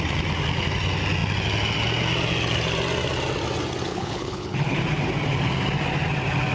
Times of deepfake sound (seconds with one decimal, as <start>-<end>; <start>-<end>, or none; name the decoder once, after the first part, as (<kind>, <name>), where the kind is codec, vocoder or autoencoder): 3.9-4.8 (codec, HILCodec)